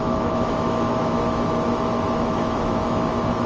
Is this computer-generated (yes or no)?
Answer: yes